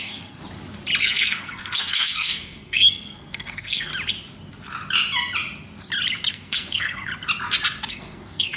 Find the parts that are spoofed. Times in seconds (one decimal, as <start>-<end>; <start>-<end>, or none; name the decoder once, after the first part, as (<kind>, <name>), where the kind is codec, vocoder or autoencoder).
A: 0.0-0.4 (codec, SNAC); 1.0-3.9; 6.3-7.1; 7.9-8.6

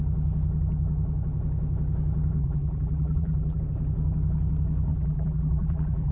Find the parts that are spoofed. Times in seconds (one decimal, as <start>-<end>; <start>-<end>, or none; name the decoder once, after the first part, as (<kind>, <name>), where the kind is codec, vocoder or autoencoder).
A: 2.4-3.6 (vocoder, BigVGAN v2); 4.9-6.1

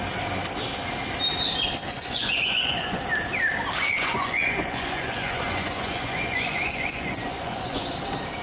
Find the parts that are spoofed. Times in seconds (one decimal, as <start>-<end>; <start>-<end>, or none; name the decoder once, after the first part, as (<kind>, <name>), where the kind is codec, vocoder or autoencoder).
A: 1.9-3.0 (vocoder, Vocos); 3.8-7.9

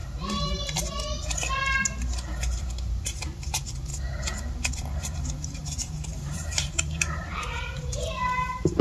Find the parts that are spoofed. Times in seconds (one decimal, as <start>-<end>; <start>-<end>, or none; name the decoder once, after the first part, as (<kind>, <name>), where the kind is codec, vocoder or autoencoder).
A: 2.4-3.9 (vocoder, BigVGAN v2); 4.7-8.8